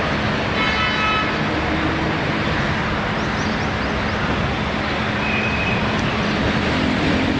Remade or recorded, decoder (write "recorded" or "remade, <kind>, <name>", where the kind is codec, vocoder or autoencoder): recorded